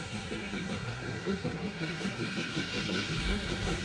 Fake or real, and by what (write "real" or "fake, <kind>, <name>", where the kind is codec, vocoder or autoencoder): fake, codec, SNAC